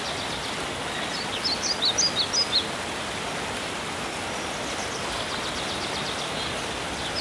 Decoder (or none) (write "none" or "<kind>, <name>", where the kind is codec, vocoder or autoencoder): none